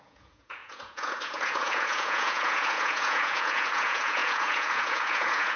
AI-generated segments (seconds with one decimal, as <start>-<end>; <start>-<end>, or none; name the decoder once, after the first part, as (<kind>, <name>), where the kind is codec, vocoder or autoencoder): 0.0-5.6 (vocoder, Vocos)